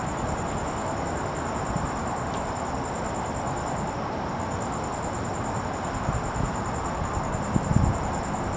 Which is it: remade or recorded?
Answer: recorded